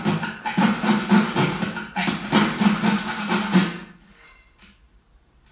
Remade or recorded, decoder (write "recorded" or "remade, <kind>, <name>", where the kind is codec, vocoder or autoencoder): recorded